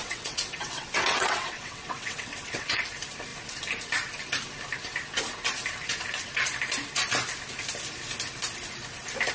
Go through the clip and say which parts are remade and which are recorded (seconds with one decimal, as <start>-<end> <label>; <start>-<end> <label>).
0.0-2.8 remade; 2.8-9.3 recorded